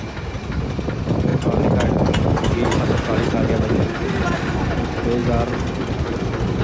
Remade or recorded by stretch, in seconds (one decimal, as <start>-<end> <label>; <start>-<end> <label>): 0.0-6.6 recorded